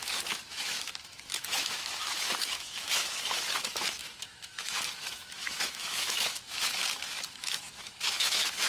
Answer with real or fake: fake